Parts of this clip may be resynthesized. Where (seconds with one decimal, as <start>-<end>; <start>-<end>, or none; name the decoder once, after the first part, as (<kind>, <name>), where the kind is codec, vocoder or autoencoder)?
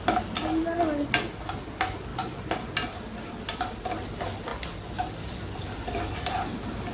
none